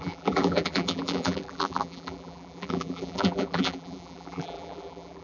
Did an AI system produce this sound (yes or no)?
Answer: yes